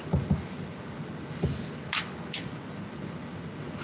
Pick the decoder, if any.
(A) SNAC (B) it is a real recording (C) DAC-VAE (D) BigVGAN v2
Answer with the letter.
B